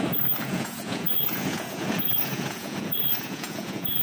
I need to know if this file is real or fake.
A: fake